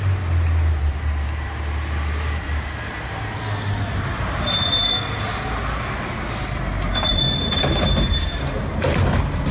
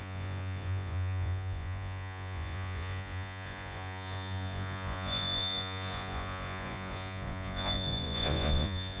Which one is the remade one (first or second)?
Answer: second